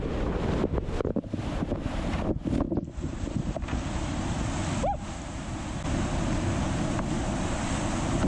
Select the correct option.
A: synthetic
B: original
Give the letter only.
B